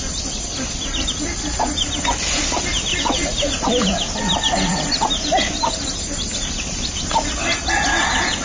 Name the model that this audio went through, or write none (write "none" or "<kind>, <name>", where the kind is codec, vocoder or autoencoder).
none